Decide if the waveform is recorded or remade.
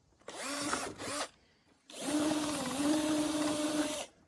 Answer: remade